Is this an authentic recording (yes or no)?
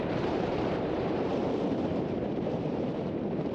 no